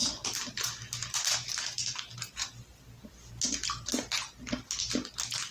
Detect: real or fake real